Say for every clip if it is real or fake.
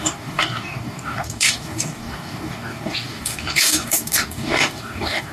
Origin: fake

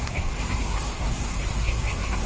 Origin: fake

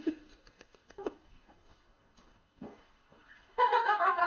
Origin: fake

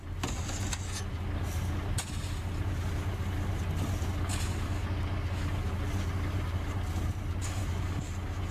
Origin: real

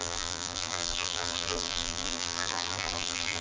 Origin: fake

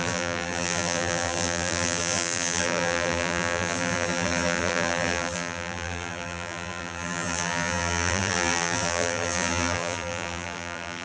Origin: fake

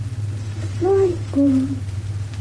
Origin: fake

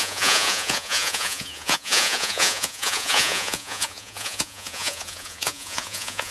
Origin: fake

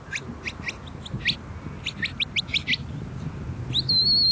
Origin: real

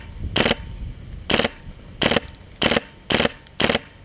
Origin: real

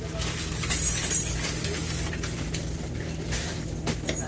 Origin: real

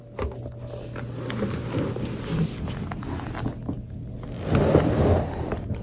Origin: real